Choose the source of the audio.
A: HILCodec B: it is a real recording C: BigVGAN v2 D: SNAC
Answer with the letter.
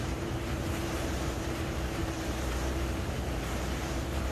C